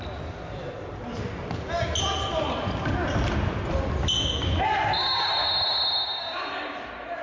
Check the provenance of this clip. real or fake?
real